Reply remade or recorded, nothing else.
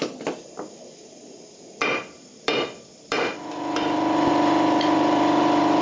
remade